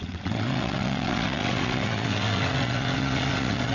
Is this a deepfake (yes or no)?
yes